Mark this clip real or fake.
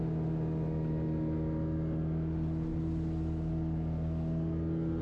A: real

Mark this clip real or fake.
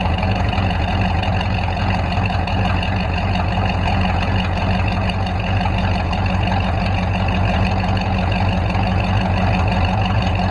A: fake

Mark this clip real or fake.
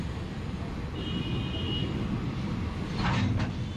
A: real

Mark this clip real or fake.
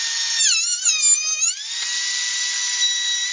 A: real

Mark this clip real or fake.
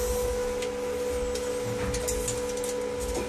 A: real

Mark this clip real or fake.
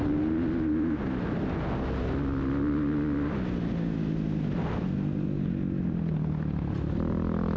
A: real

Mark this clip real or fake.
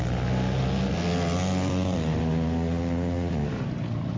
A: real